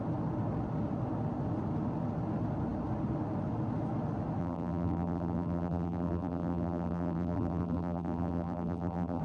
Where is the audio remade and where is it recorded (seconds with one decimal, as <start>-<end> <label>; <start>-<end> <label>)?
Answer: 0.0-4.4 recorded; 4.4-9.2 remade